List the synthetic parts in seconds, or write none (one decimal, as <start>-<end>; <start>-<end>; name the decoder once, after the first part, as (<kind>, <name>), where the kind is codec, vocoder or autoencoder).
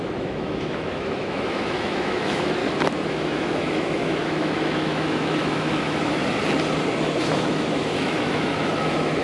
0.0-2.6 (autoencoder, DAC-VAE); 3.1-6.2; 7.2-9.2